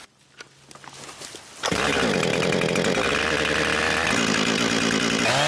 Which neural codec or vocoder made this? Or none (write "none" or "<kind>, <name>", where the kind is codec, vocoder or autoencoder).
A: none